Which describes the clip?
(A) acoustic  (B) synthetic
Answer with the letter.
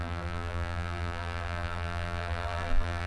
B